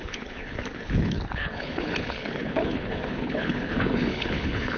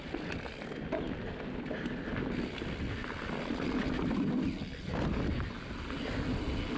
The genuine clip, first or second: second